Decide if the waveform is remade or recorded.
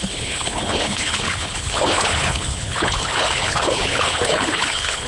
remade